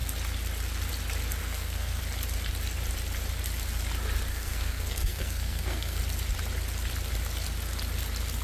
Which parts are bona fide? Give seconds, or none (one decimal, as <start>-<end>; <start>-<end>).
0.0-1.4; 2.0-4.3; 6.0-8.4